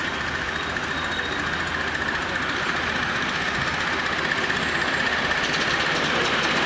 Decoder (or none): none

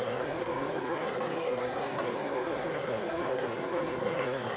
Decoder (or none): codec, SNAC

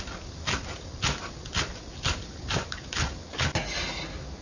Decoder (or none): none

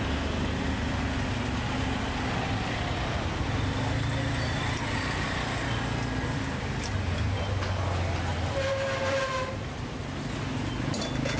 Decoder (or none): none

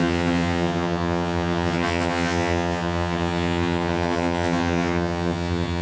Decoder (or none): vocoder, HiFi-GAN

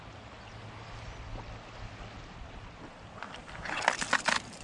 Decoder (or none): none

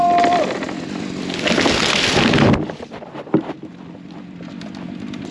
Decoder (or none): none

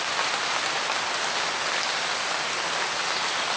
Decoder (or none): none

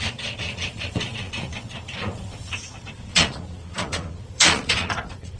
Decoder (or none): vocoder, Vocos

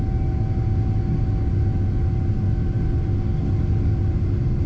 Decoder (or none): none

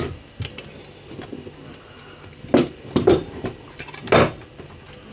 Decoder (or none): none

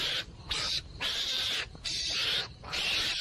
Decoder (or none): vocoder, BigVGAN v2